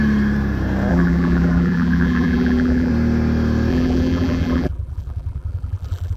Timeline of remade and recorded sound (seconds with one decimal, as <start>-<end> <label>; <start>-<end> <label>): 0.0-0.9 recorded; 0.9-2.9 remade; 2.9-3.7 recorded; 3.7-6.2 remade